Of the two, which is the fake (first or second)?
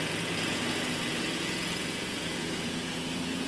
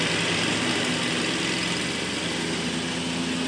first